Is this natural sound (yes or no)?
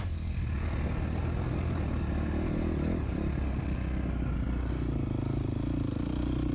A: yes